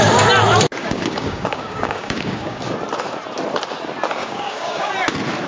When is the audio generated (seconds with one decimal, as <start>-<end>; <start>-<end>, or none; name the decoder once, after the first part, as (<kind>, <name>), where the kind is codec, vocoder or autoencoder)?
0.8-2.6 (codec, DAC); 4.2-4.9